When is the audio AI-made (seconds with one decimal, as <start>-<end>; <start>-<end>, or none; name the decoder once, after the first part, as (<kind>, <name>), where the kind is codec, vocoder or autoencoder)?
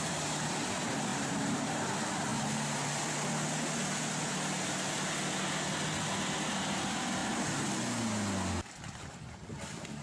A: 1.1-1.9 (vocoder, BigVGAN v2)